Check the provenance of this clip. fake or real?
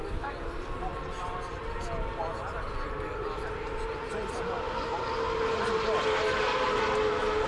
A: real